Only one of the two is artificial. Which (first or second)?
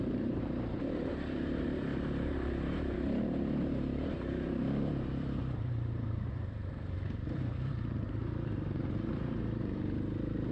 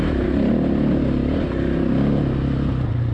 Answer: first